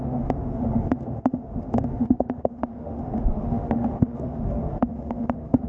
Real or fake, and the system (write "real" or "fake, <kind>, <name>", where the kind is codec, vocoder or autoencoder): fake, autoencoder, DAC-VAE